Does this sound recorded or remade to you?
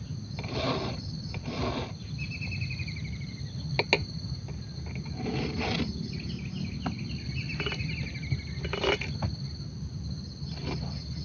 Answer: recorded